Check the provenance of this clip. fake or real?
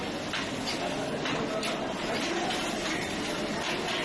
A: real